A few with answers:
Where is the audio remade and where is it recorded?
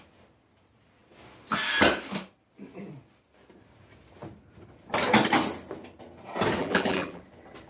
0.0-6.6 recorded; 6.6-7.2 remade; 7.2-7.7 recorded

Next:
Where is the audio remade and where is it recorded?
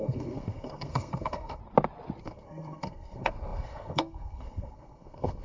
0.0-1.6 remade; 1.6-2.2 recorded; 2.2-5.4 remade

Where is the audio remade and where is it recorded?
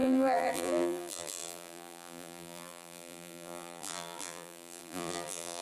0.0-5.6 remade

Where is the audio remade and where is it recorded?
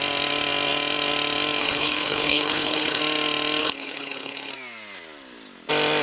0.0-1.6 recorded; 1.6-3.0 remade; 3.0-3.6 recorded; 3.6-4.5 remade; 4.5-6.0 recorded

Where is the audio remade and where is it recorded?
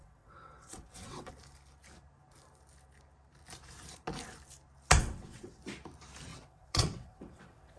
0.0-1.3 remade; 1.3-5.0 recorded; 5.0-5.6 remade; 5.6-6.3 recorded; 6.3-7.8 remade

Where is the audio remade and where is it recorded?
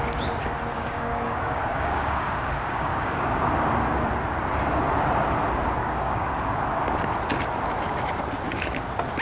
0.0-0.7 recorded; 0.7-3.4 remade; 3.4-5.8 recorded; 5.8-6.6 remade; 6.6-9.2 recorded